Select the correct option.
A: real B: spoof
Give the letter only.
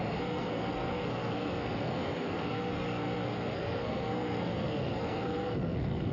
B